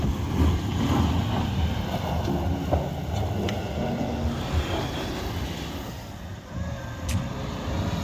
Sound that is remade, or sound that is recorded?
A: recorded